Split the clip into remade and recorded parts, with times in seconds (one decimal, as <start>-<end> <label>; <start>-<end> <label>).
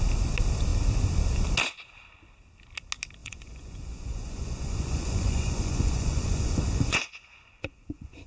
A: 0.0-3.2 recorded; 3.2-8.3 remade